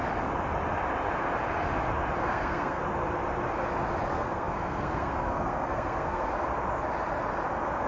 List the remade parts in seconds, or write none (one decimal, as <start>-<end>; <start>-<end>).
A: 2.2-2.8; 4.1-6.3